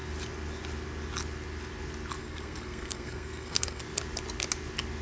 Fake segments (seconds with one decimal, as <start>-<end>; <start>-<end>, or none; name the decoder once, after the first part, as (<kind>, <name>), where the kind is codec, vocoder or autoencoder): 2.2-3.8 (codec, SNAC)